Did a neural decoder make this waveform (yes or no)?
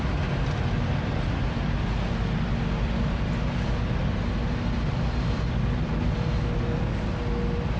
no